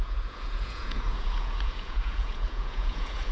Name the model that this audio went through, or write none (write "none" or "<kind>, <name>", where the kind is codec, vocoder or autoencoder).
vocoder, Vocos